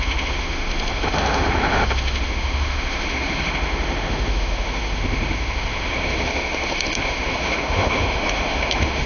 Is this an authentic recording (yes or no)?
no